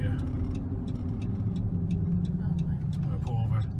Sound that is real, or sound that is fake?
real